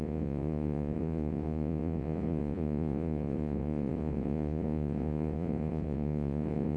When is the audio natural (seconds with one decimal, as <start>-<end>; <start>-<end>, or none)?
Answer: none